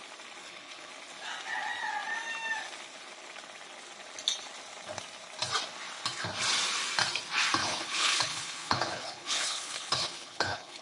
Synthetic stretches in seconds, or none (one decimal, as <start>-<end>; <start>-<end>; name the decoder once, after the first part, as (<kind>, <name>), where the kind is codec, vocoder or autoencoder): 0.4-0.9 (codec, HILCodec); 7.6-10.8